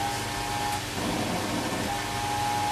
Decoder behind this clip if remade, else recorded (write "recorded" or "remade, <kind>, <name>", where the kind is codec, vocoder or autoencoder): recorded